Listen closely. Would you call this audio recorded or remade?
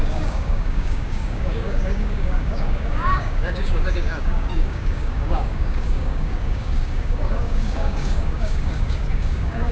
remade